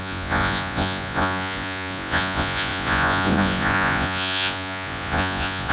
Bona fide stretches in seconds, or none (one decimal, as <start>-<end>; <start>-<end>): none